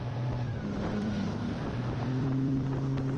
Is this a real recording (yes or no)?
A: no